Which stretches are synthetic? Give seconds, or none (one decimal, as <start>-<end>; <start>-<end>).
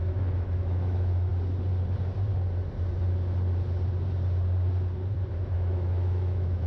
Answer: 0.0-1.3; 5.3-6.7